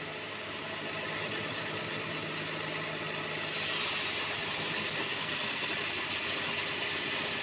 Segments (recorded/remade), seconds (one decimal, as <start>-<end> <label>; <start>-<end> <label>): 0.0-5.0 recorded; 5.0-5.7 remade; 5.7-7.4 recorded